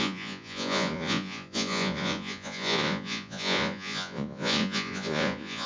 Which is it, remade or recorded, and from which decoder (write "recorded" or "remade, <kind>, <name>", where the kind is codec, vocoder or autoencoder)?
remade, vocoder, Vocos